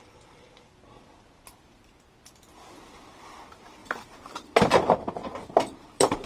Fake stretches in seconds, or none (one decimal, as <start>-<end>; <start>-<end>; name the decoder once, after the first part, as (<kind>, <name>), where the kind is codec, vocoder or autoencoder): 3.8-6.3 (vocoder, BigVGAN v2)